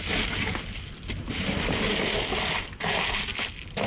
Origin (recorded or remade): recorded